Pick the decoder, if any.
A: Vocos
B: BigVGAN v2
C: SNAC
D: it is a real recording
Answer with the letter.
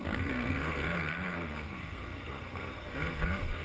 C